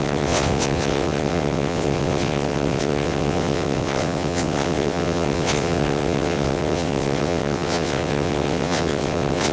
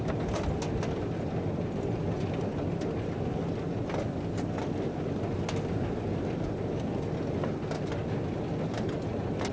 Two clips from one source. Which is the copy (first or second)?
first